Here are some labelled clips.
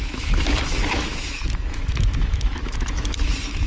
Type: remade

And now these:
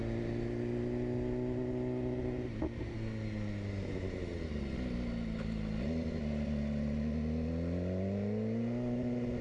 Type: recorded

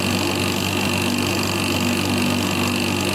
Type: recorded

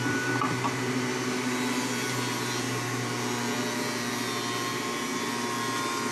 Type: recorded